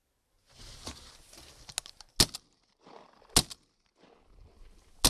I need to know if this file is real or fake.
real